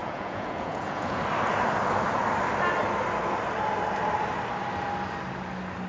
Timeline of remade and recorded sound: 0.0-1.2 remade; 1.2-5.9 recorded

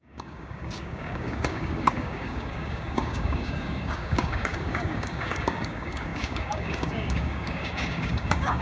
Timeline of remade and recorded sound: 0.0-8.6 remade